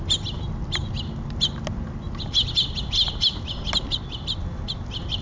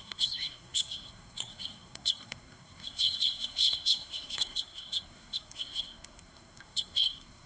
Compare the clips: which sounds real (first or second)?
first